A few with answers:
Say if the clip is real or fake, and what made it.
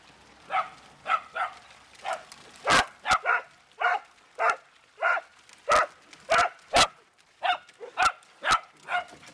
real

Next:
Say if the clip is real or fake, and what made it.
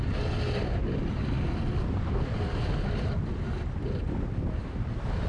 real